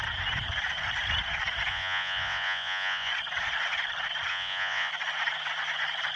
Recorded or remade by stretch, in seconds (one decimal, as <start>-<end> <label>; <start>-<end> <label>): 0.0-1.7 recorded; 1.7-3.1 remade; 3.1-4.3 recorded; 4.3-4.9 remade; 4.9-6.2 recorded